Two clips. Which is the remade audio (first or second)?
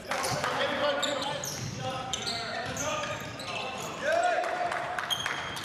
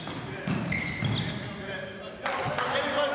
first